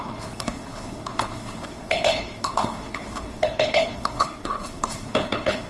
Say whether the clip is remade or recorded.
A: remade